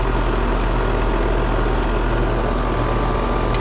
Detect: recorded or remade recorded